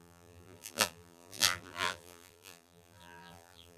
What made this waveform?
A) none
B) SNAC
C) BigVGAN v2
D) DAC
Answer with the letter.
C